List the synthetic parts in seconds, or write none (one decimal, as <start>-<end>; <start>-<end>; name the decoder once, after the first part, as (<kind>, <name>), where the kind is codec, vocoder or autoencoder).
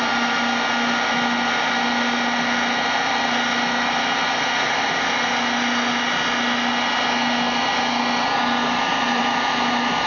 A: none